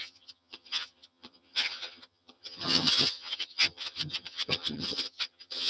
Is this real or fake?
fake